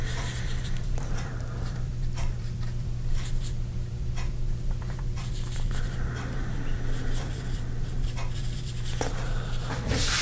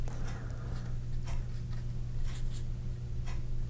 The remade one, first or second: first